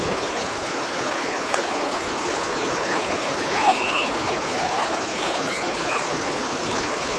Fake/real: fake